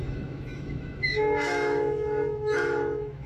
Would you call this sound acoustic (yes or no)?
no